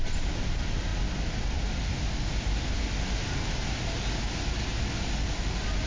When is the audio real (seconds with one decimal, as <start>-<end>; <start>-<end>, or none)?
0.0-5.9